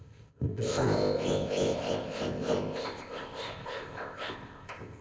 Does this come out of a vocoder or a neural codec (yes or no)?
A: yes